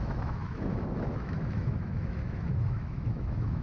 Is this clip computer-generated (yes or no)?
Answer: yes